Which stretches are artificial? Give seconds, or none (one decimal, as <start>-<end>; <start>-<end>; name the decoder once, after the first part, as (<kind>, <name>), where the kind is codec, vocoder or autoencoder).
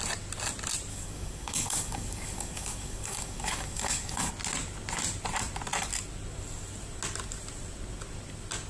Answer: 0.9-4.3 (codec, DAC)